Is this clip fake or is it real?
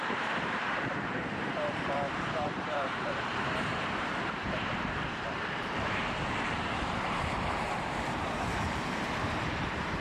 fake